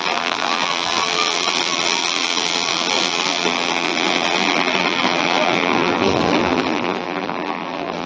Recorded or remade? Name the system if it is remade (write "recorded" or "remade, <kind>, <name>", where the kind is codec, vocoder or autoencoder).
remade, vocoder, BigVGAN v2